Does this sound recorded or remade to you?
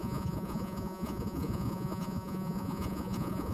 remade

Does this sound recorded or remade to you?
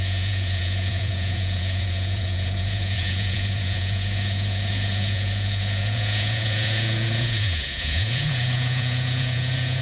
remade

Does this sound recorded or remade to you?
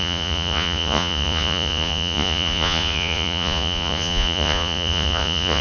remade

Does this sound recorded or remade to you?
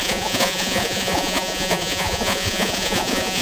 remade